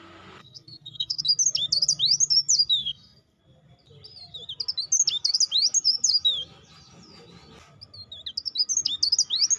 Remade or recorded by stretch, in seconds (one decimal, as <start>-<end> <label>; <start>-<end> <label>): 0.0-0.4 recorded; 0.4-1.2 remade; 1.2-2.8 recorded; 2.8-3.4 remade; 3.4-9.6 recorded